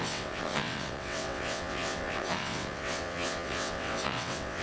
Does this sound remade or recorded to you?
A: remade